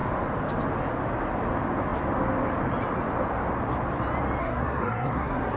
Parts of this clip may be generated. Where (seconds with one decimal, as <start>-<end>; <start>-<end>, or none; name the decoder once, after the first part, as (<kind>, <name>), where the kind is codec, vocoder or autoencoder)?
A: 4.4-5.6 (codec, SNAC)